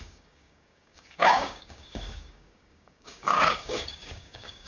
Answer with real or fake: fake